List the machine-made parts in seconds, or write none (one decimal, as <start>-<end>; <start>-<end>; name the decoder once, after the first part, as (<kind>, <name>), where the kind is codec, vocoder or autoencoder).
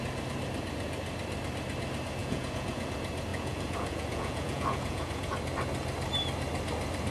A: 2.2-2.9 (vocoder, Vocos); 3.3-5.4